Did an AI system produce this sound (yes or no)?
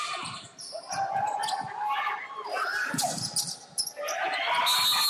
no